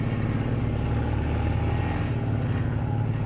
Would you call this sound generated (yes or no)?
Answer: no